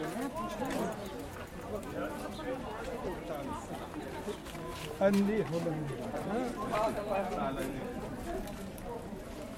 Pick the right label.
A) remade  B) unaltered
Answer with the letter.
B